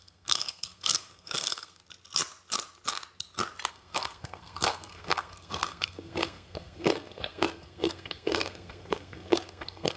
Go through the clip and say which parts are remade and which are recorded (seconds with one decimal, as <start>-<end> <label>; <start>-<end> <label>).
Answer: 0.0-1.8 remade; 1.8-3.7 recorded; 3.7-10.0 remade